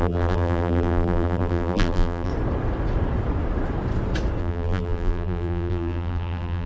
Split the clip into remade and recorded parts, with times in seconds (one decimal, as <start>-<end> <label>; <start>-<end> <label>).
0.0-2.3 remade; 2.3-4.4 recorded; 4.4-6.7 remade